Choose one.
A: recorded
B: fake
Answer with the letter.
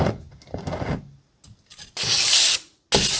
A